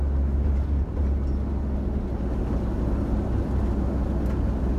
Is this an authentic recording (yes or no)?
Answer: yes